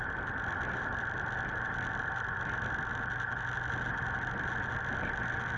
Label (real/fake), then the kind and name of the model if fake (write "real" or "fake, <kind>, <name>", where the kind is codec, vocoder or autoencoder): real